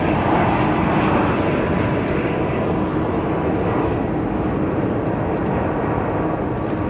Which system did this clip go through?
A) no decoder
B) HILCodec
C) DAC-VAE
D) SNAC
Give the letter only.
A